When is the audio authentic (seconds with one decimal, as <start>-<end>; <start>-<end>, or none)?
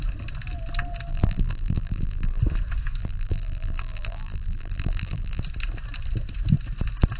0.0-1.1; 2.4-3.0; 5.4-7.2